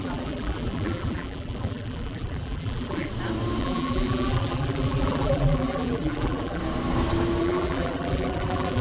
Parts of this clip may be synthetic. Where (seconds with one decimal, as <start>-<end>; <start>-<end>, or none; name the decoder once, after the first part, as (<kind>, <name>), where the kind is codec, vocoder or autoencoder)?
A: 0.0-3.1 (vocoder, BigVGAN v2); 3.6-6.6; 7.4-8.8